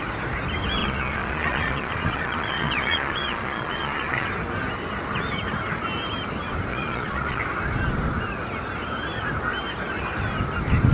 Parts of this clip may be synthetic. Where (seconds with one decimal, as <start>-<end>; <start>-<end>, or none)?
0.8-4.3; 6.7-7.4